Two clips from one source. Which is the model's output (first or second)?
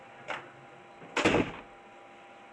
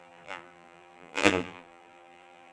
second